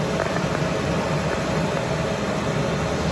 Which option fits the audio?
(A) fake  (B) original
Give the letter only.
B